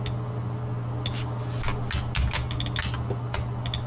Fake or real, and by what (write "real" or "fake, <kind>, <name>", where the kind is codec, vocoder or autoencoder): real